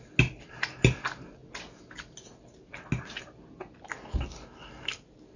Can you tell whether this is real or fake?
real